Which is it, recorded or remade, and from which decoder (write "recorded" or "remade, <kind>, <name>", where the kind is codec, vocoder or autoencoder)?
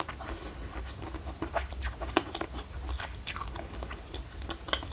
recorded